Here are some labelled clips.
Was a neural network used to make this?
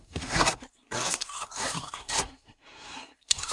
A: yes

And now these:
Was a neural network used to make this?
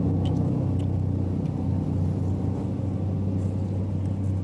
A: no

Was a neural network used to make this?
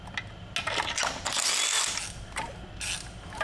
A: no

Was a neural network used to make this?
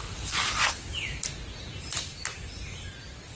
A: no